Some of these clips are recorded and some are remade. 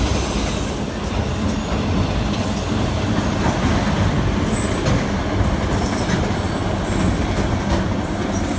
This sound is recorded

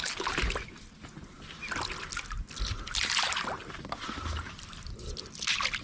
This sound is recorded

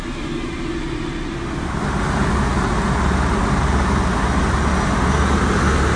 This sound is recorded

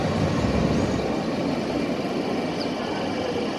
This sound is recorded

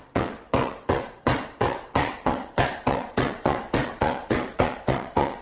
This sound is remade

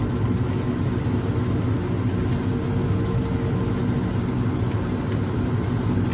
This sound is recorded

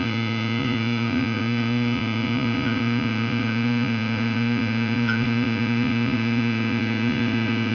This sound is remade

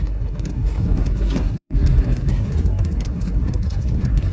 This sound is remade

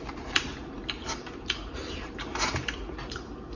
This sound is remade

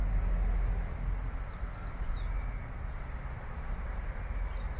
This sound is recorded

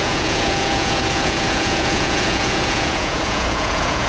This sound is remade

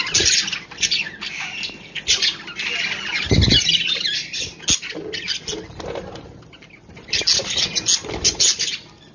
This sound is recorded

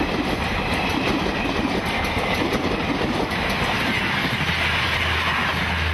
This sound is recorded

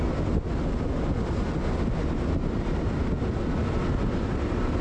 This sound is recorded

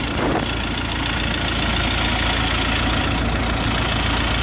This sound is recorded